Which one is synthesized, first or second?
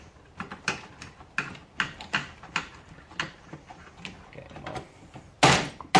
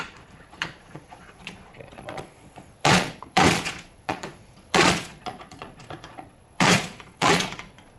second